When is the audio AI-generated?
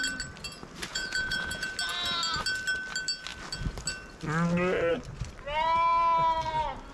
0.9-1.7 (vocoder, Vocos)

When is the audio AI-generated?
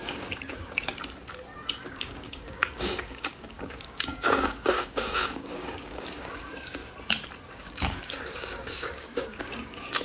0.0-0.9 (codec, DAC); 1.8-6.8; 7.5-10.0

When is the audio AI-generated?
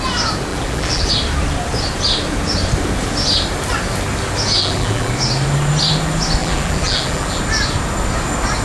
0.5-1.1 (vocoder, BigVGAN v2); 4.6-5.1; 6.4-7.4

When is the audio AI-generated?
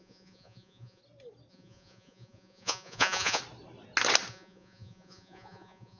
0.0-1.0 (vocoder, Vocos); 1.5-3.4; 4.3-6.0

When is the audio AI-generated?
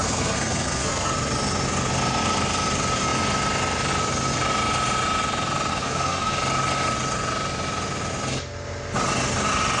0.0-1.1 (codec, SNAC); 5.7-6.3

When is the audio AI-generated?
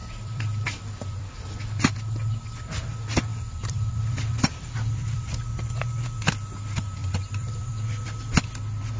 0.0-1.6 (vocoder, BigVGAN v2); 3.3-5.3; 7.0-7.7